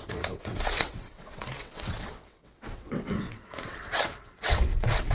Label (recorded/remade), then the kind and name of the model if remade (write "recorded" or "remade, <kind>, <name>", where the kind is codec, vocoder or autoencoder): remade, vocoder, WaveNeXt